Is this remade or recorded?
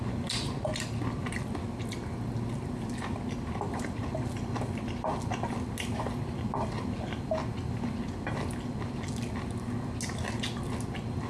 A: recorded